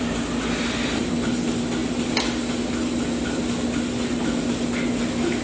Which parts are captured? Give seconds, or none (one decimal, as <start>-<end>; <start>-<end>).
0.0-5.4